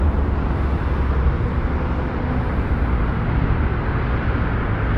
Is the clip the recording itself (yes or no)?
yes